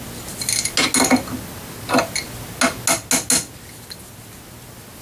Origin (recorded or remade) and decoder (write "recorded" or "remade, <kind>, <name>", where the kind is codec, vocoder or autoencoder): recorded